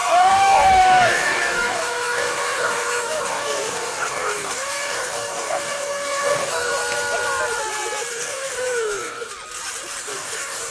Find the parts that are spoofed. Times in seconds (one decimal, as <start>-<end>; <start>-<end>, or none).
0.0-6.7; 8.1-9.3; 10.0-10.7